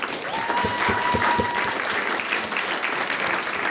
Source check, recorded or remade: recorded